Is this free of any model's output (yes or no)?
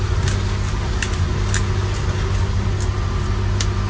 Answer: yes